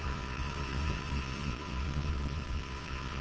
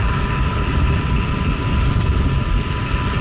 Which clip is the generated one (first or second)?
first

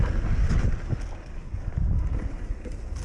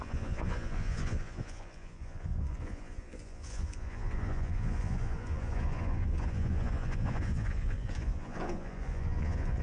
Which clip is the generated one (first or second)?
second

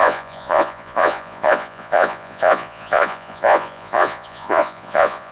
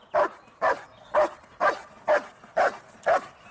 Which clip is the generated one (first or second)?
first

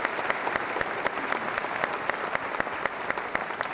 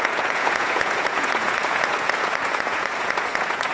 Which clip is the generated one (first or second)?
second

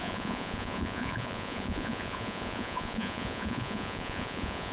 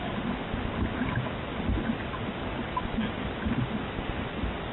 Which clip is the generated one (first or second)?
first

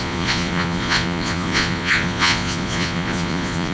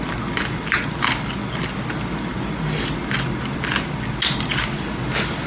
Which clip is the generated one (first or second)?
first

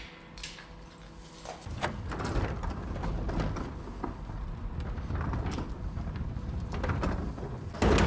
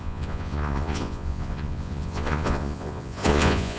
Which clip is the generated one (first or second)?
second